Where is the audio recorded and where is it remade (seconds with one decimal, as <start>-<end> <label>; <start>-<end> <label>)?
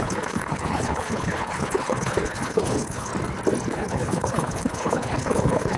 0.0-3.1 remade; 3.1-3.7 recorded; 3.7-5.8 remade